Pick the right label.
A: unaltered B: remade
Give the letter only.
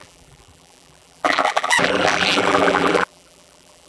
B